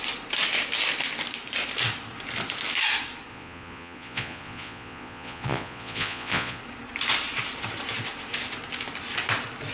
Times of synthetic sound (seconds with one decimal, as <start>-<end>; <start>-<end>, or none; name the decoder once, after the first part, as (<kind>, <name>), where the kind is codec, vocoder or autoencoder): 3.3-6.6 (vocoder, Vocos)